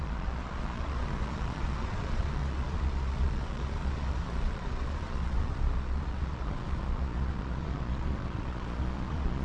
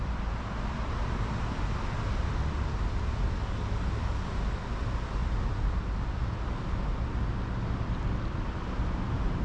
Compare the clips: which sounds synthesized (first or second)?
first